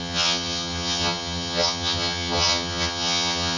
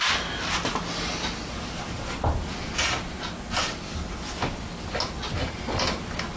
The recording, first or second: second